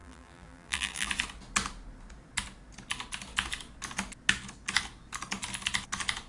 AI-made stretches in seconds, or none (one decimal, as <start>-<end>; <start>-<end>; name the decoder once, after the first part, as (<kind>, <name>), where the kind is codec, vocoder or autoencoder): 0.0-1.1 (vocoder, BigVGAN v2)